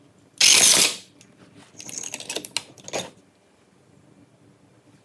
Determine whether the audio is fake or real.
real